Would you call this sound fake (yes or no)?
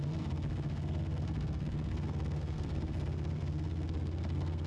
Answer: yes